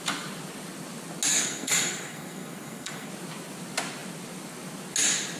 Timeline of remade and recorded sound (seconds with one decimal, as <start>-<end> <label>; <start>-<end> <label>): 0.0-1.3 recorded; 1.3-3.1 remade; 3.1-5.4 recorded